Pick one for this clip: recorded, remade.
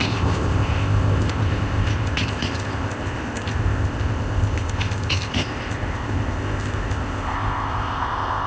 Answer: remade